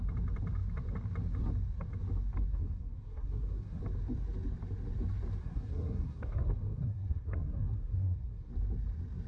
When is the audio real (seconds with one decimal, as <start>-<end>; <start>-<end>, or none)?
0.0-2.5; 3.8-5.4; 8.5-9.3